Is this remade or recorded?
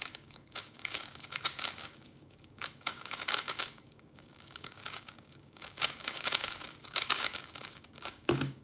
remade